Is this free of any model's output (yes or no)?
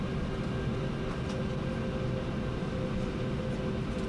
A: yes